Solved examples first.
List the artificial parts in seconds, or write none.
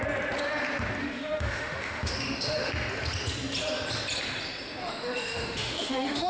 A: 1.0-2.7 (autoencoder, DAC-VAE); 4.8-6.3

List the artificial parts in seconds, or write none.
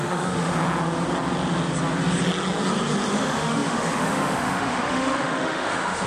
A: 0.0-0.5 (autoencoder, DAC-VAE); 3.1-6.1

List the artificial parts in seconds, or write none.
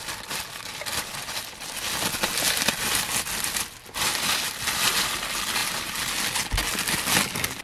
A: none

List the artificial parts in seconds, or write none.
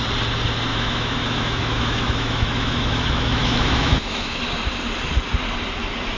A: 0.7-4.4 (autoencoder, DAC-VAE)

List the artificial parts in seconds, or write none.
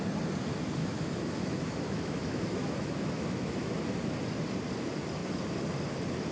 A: 0.8-3.7 (autoencoder, DAC-VAE)